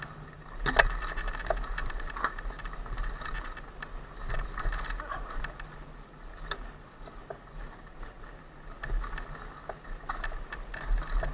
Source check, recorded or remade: recorded